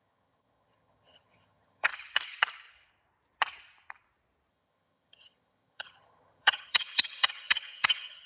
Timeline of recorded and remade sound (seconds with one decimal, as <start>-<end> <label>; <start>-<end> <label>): 0.0-1.9 remade; 1.9-4.5 recorded; 4.5-8.3 remade